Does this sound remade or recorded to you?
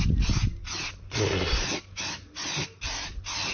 recorded